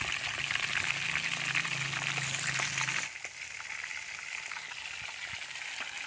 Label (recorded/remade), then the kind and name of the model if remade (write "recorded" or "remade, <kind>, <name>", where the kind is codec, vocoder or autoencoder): recorded